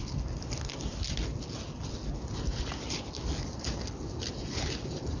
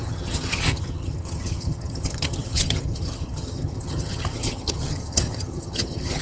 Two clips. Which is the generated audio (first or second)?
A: second